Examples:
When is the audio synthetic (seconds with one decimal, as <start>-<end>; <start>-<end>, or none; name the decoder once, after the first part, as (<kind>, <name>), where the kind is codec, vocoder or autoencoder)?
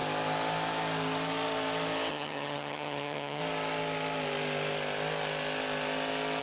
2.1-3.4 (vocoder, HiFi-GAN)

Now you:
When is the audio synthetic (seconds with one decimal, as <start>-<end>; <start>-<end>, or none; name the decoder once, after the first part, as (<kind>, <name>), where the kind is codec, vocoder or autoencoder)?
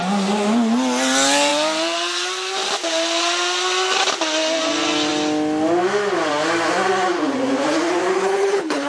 8.1-8.9 (codec, HILCodec)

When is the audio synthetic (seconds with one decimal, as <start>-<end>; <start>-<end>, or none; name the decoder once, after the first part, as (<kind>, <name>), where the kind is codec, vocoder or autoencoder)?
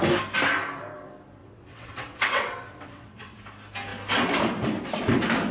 1.4-3.4 (vocoder, WaveNeXt)